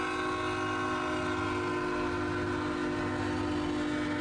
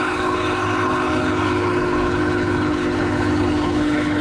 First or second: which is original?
first